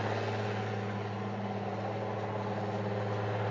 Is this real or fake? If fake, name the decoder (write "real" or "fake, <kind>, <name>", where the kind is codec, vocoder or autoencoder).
real